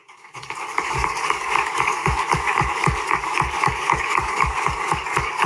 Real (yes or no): no